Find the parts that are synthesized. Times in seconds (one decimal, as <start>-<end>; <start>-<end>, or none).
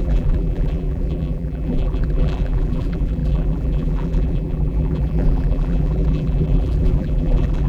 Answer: 0.0-7.7